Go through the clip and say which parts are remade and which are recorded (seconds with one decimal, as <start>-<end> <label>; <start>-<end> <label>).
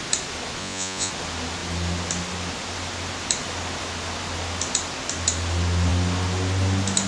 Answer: 0.0-0.6 recorded; 0.6-1.1 remade; 1.1-7.1 recorded